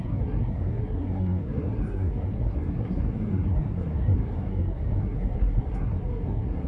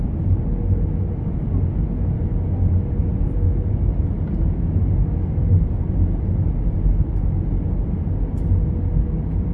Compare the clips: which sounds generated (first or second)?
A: first